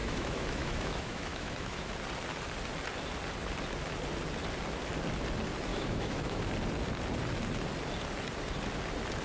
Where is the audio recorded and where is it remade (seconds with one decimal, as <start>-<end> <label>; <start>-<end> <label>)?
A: 0.0-1.9 remade; 1.9-5.7 recorded; 5.7-6.4 remade; 6.4-9.2 recorded